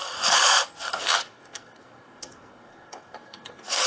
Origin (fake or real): fake